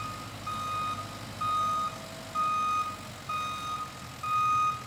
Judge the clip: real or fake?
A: real